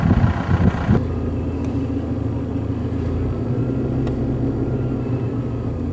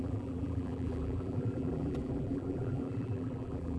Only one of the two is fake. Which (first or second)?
second